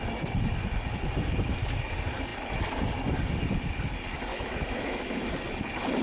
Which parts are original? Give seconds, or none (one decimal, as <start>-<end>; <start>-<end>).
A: 0.0-4.3; 5.3-6.0